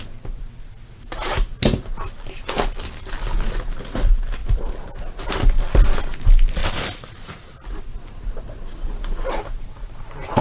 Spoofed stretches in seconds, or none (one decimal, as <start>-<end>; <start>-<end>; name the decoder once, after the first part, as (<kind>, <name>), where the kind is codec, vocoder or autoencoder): 4.4-5.2 (vocoder, BigVGAN v2); 6.6-8.9